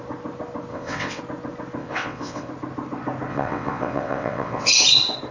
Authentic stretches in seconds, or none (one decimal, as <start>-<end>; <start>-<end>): 0.0-0.7; 1.2-1.8; 2.5-3.3; 4.7-5.3